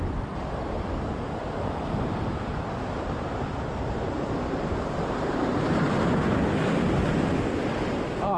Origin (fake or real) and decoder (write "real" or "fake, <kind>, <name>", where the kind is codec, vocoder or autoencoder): fake, vocoder, BigVGAN v2